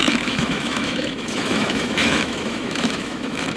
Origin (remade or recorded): remade